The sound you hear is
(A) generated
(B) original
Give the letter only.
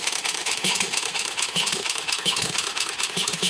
A